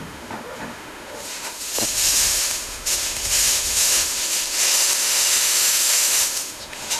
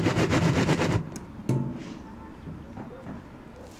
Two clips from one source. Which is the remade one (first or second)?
first